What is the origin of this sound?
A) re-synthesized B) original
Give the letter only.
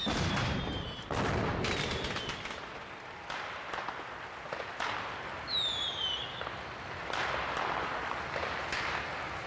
B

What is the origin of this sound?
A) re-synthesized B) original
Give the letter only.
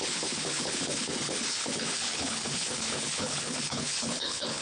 A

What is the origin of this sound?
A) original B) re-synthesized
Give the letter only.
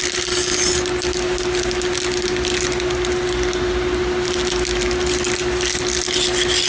A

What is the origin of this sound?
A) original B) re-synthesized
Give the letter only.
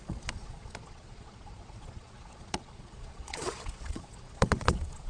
B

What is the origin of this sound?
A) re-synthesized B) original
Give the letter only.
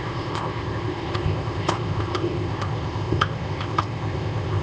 A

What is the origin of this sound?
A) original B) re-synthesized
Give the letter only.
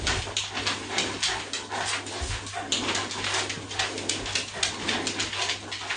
A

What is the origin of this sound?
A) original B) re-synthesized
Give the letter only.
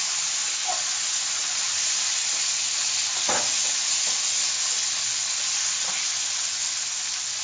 A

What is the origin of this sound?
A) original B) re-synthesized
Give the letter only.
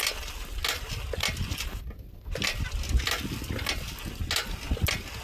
A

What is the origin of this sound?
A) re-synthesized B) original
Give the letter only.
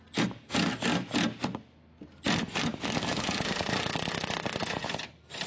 B